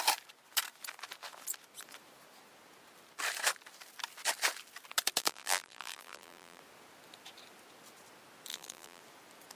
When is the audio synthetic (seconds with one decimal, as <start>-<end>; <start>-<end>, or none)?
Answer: 5.2-6.6; 8.5-9.0